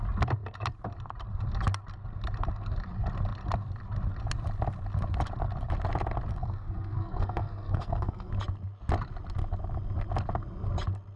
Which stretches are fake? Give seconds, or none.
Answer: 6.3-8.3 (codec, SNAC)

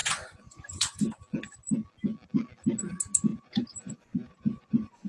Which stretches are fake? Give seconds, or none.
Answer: 0.0-1.0 (vocoder, Vocos); 3.3-5.1